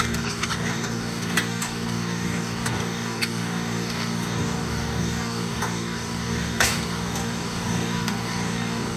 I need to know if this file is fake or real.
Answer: fake